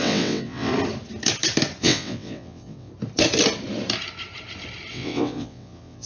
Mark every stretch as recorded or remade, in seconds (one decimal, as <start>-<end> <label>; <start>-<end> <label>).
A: 0.0-0.7 remade; 0.7-1.8 recorded; 1.8-2.9 remade; 2.9-4.9 recorded; 4.9-6.1 remade